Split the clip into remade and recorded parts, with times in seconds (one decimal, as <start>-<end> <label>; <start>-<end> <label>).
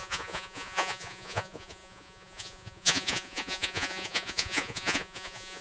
0.0-5.6 remade